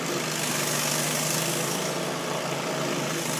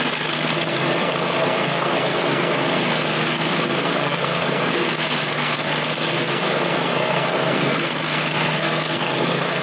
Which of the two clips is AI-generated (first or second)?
second